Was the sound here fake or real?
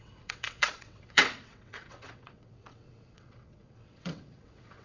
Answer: fake